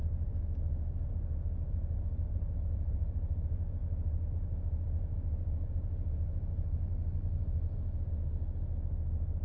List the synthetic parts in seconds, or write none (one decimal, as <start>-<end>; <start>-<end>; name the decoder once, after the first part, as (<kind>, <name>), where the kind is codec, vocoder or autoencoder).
none